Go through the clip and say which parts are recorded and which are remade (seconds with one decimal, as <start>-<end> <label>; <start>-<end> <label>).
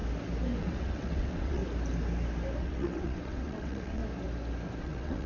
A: 0.0-0.6 recorded; 0.6-1.6 remade; 1.6-2.6 recorded; 2.6-4.0 remade; 4.0-4.8 recorded; 4.8-5.3 remade